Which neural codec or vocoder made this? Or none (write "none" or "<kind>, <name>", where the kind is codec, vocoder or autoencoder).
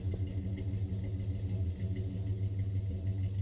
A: none